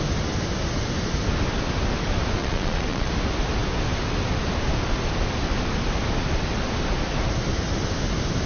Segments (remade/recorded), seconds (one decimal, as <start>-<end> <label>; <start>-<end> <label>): 0.0-2.4 recorded; 2.4-3.1 remade; 3.1-8.5 recorded